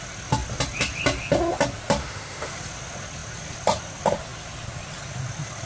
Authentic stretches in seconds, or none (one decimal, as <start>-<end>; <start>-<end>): 0.0-2.0; 2.5-5.7